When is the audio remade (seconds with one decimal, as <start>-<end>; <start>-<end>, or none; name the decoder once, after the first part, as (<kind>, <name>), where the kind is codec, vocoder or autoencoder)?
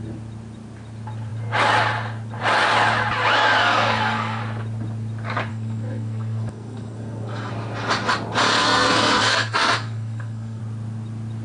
3.6-4.4 (codec, SNAC); 5.5-7.5; 8.6-10.6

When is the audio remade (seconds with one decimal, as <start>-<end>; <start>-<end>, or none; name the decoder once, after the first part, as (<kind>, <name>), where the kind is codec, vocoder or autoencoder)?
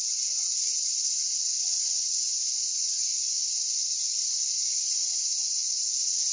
none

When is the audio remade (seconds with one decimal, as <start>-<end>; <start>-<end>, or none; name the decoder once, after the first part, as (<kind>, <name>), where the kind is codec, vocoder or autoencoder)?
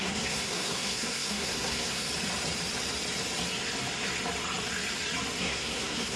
0.0-2.1 (codec, SNAC); 5.4-6.2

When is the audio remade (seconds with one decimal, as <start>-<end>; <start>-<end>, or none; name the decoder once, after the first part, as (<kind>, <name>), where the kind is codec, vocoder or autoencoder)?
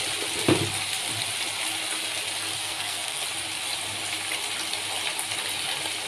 2.6-3.2 (codec, SNAC)